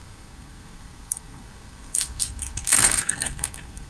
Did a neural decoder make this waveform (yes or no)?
yes